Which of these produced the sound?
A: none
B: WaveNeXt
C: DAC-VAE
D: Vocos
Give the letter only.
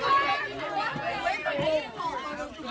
A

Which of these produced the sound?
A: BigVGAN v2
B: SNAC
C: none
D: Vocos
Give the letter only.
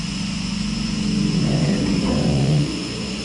D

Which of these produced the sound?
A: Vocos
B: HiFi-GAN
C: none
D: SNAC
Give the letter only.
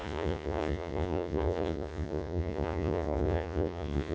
A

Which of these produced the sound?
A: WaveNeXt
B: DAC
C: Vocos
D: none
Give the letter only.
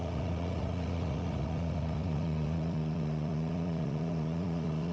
C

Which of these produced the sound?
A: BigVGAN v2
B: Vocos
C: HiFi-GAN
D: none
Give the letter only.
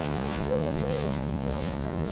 B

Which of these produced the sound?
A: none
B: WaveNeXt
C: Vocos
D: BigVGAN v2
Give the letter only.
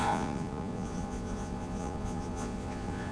C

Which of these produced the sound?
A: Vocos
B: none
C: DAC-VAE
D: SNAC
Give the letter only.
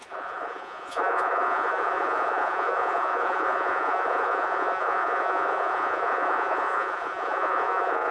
A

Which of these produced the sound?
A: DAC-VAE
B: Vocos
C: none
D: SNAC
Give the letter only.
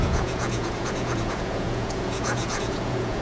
B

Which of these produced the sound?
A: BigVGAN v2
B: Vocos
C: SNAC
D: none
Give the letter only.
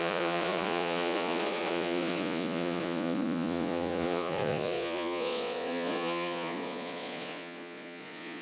B